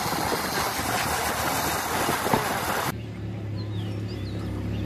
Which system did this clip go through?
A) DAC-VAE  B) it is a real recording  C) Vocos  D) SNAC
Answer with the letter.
B